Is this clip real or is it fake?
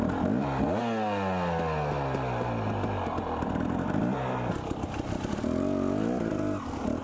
real